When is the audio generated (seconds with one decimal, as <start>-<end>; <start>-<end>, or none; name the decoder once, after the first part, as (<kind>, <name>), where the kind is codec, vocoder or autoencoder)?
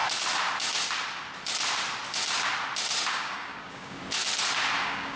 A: 3.1-4.0 (codec, DAC); 4.8-5.2